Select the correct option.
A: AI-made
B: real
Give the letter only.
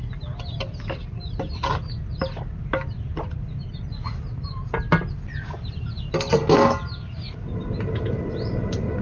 B